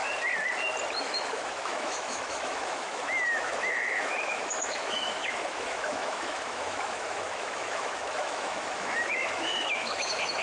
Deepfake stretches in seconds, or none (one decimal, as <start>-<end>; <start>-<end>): 1.0-10.4